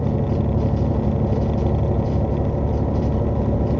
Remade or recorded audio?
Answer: recorded